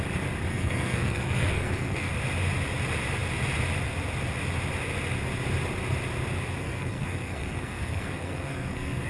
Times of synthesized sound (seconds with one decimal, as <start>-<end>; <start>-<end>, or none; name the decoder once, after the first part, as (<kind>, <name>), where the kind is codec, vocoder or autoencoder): 0.5-2.1 (codec, SNAC); 6.6-9.1